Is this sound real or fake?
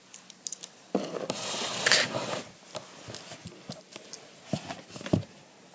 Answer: real